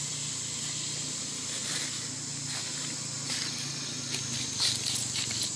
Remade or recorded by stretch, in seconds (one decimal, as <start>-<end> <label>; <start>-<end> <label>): 0.0-5.6 recorded